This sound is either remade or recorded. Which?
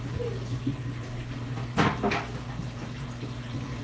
recorded